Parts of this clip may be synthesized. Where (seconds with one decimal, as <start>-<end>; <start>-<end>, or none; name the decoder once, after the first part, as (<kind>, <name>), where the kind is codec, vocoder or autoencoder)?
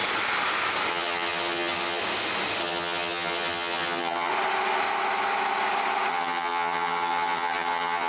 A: 0.9-2.0 (vocoder, HiFi-GAN); 2.6-4.3; 6.1-8.1